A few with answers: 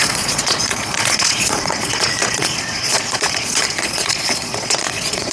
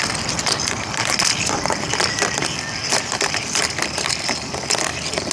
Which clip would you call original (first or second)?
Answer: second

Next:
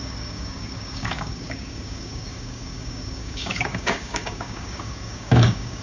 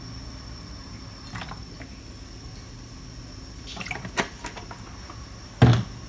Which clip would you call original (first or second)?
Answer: second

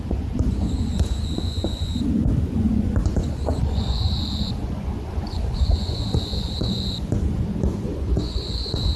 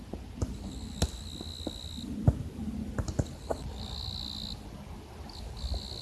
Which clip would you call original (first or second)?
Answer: second